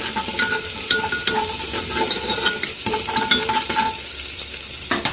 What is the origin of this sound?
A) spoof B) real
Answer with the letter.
B